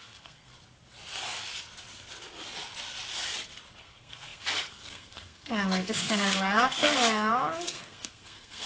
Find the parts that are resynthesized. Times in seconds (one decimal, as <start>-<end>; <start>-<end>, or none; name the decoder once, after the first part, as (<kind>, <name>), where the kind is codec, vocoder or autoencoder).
0.0-0.5 (codec, SNAC); 3.8-8.7